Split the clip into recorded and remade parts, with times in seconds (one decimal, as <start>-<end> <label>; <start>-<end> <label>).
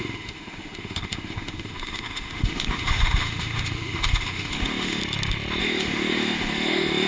0.0-5.0 remade; 5.0-5.6 recorded; 5.6-7.1 remade